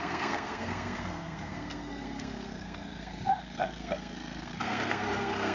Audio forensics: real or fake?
fake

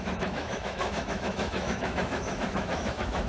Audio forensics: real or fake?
fake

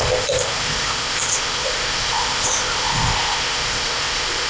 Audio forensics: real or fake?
fake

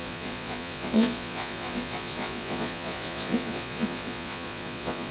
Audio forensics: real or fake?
fake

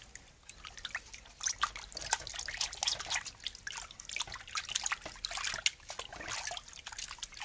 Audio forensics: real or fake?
real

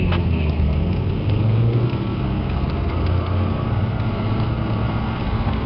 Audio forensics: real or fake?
fake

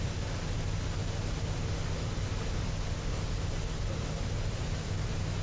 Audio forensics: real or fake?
real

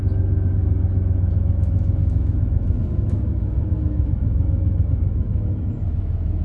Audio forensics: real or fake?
fake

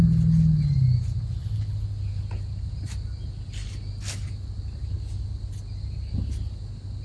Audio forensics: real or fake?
real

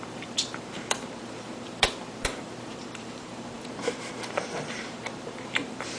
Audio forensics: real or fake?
fake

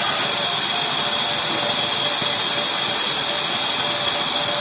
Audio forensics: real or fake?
real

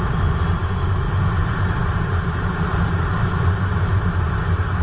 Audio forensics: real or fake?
fake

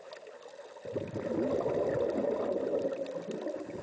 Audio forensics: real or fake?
real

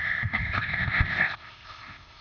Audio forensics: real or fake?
fake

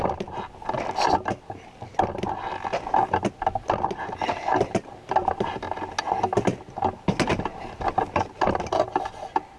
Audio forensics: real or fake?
real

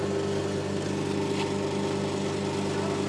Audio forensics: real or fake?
real